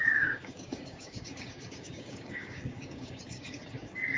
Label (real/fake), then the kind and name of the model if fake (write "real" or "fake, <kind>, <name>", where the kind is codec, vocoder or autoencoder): fake, codec, DAC